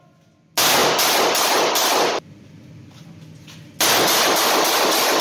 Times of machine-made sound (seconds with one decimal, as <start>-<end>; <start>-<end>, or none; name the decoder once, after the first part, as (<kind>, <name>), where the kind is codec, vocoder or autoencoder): none